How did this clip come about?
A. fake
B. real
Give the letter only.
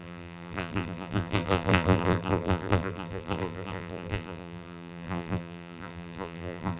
A